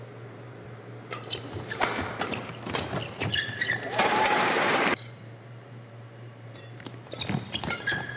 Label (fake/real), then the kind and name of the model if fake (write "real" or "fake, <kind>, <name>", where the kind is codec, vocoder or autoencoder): fake, vocoder, BigVGAN v2